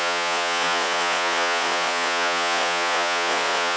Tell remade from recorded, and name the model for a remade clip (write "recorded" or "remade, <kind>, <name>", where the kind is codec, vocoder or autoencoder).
remade, vocoder, Vocos